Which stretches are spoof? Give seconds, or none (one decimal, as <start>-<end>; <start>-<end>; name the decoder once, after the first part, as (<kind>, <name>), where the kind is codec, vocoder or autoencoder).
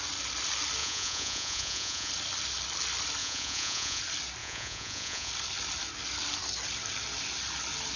0.8-2.1 (vocoder, Vocos); 3.2-4.0; 4.4-5.3